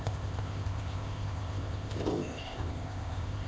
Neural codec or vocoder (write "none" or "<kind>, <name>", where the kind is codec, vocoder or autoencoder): codec, ZipCodec